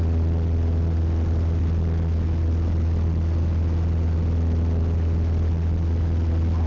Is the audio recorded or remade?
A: recorded